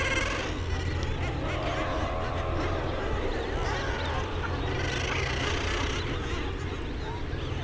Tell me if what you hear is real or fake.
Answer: real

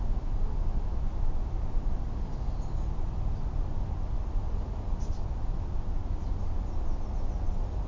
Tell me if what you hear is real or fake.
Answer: real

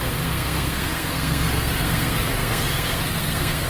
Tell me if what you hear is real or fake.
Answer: fake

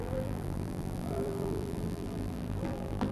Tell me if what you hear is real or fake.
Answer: fake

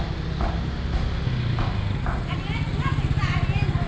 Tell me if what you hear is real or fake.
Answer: real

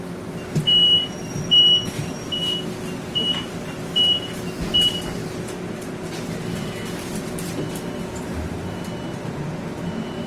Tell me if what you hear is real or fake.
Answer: real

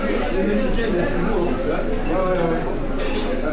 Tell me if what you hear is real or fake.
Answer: real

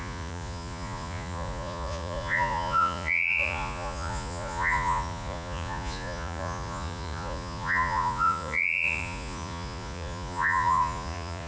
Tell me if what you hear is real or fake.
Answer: fake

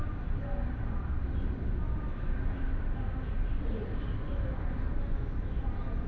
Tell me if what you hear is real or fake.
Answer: real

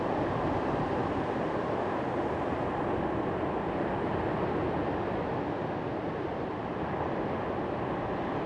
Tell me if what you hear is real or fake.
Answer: real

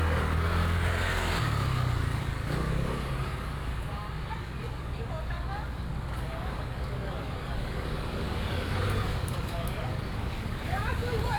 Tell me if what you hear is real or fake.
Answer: fake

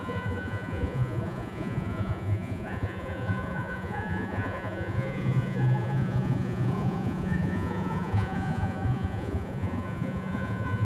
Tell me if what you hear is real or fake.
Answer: fake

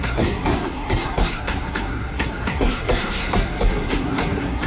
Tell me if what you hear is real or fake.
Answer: fake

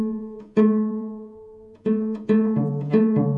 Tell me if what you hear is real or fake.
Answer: fake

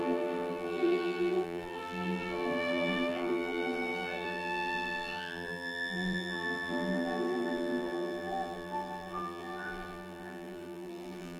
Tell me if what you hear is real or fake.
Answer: fake